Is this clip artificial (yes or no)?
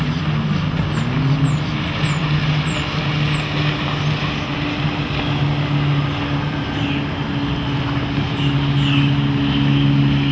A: no